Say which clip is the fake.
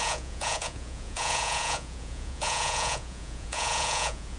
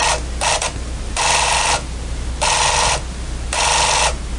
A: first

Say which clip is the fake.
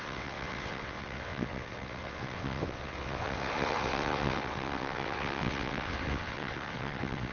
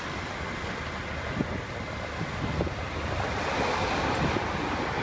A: first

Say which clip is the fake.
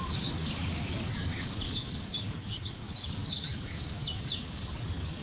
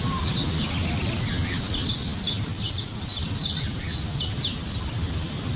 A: first